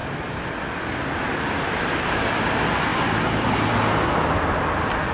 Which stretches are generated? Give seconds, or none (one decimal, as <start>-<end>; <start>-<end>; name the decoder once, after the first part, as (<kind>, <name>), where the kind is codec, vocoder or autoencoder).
none

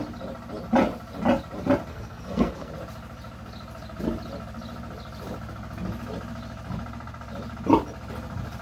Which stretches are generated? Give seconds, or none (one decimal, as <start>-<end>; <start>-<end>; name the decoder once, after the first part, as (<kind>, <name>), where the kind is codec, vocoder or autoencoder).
1.9-2.7 (codec, SNAC)

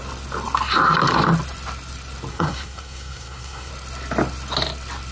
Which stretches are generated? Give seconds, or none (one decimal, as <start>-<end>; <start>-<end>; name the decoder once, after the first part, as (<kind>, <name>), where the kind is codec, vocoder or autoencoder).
2.3-3.7 (codec, SNAC)

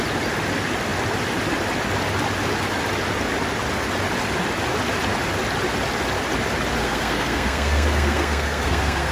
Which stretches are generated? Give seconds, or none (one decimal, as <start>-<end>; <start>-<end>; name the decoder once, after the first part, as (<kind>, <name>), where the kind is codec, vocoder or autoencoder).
6.8-9.1 (codec, SNAC)

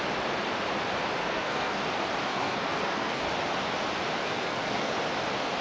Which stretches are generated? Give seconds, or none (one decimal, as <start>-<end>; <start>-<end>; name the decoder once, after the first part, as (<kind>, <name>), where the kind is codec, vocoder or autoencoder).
1.2-1.8 (codec, SNAC); 2.3-3.2; 4.2-4.9

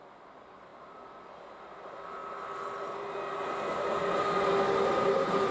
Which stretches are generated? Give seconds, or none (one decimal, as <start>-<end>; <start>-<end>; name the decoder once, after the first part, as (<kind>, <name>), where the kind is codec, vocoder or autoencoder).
none

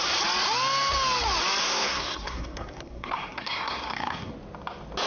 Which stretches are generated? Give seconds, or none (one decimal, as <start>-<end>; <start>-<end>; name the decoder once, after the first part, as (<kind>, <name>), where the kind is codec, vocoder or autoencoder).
1.6-4.3 (codec, SNAC)

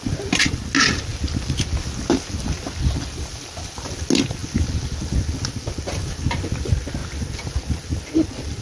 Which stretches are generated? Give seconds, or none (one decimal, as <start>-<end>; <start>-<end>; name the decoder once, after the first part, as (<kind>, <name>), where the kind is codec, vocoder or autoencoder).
none